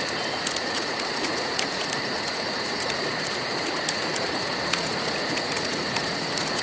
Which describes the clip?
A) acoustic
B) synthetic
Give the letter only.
B